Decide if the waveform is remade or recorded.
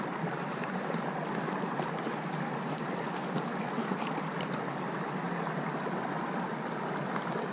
recorded